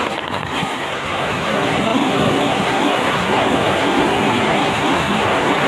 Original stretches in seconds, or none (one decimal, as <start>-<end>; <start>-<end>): none

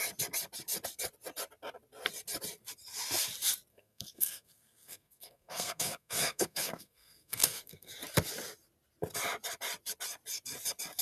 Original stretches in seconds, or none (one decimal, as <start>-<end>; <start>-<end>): 0.0-3.7; 7.9-11.0

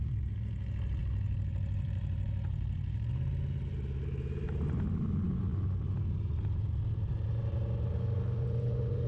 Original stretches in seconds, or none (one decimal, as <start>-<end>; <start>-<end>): 0.0-9.1

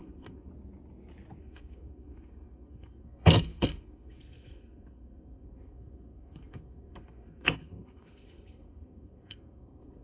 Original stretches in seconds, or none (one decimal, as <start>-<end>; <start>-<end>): 0.5-1.4

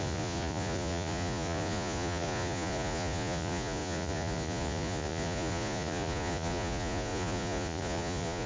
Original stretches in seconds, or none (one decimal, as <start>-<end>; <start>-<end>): none

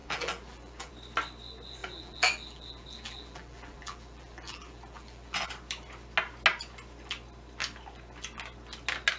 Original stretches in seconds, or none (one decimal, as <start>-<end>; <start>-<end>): 0.9-1.8; 5.5-9.2

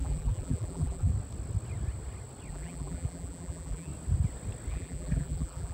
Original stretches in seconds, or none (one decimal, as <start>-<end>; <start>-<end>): 1.1-2.5; 3.9-4.7